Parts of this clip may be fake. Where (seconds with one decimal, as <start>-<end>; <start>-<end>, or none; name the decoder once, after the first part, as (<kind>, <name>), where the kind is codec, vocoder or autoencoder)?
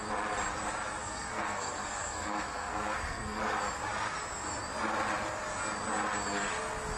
1.0-3.4 (codec, SNAC)